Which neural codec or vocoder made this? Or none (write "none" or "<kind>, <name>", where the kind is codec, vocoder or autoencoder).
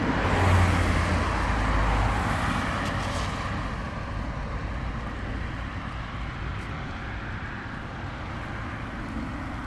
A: none